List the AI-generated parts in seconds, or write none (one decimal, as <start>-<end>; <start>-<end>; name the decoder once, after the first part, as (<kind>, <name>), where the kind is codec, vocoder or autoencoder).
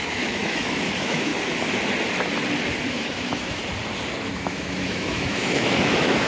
0.0-1.3 (autoencoder, DAC-VAE); 2.9-3.6; 4.3-6.3